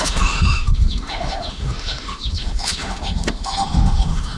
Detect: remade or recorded remade